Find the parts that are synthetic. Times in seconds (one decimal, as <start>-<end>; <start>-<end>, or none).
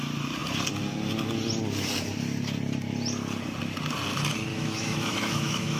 4.5-5.8